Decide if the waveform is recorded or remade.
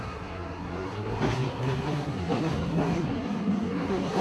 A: remade